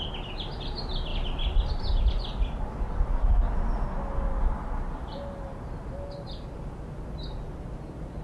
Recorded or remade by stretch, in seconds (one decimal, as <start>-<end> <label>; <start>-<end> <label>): 0.0-8.2 recorded